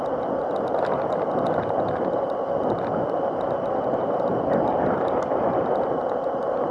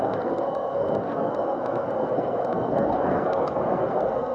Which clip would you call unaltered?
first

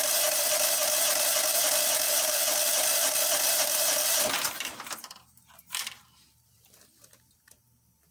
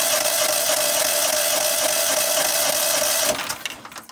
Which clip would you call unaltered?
second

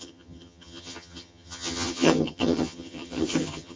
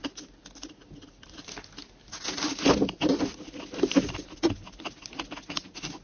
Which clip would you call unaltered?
second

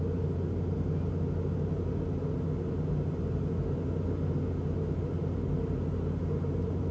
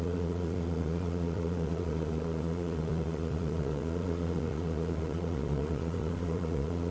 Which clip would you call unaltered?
first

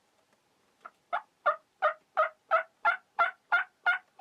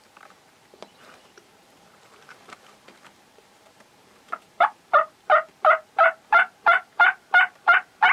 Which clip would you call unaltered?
first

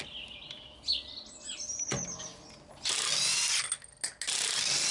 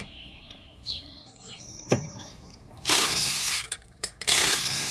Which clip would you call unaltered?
first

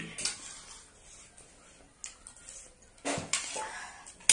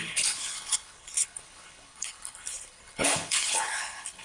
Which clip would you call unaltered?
first